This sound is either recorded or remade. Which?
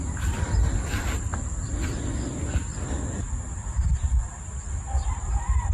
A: recorded